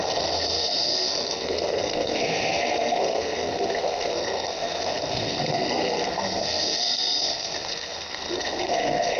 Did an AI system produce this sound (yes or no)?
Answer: yes